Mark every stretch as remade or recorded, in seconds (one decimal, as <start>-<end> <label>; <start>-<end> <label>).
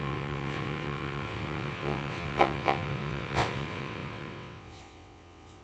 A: 0.0-5.6 remade